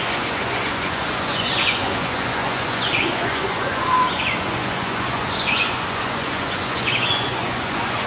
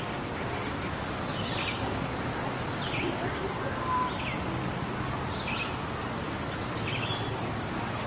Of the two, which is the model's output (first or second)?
first